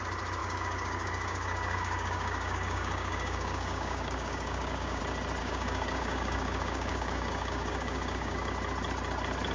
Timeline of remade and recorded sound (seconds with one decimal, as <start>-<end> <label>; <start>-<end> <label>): 0.0-0.4 recorded; 0.4-5.0 remade; 5.0-5.4 recorded; 5.4-8.5 remade; 8.5-9.5 recorded